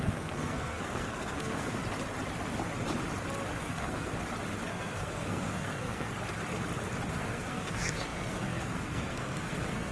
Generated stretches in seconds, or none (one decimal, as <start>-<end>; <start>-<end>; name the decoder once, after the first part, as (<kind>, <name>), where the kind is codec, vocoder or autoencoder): 0.0-1.8 (codec, SNAC); 3.6-4.1; 4.7-6.1; 7.1-9.9